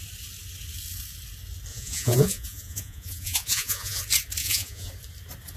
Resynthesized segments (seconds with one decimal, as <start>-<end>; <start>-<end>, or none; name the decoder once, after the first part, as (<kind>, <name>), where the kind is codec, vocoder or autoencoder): 1.7-4.0 (vocoder, Vocos); 4.4-4.9